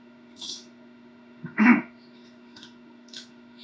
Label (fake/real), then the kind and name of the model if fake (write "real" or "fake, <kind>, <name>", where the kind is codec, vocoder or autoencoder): fake, autoencoder, DAC-VAE